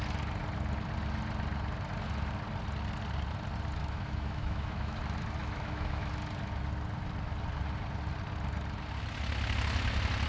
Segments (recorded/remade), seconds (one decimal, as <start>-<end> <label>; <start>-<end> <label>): 0.0-3.8 recorded; 3.8-5.0 remade; 5.0-5.4 recorded; 5.4-6.1 remade; 6.1-10.3 recorded